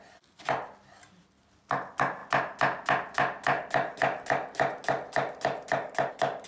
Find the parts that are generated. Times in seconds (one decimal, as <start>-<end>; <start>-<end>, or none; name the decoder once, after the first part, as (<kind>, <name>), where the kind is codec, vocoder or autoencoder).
none